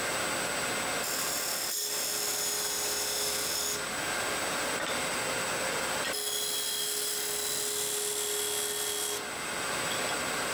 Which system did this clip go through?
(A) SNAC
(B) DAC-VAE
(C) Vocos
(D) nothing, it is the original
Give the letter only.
D